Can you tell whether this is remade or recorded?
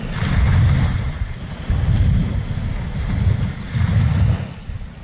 recorded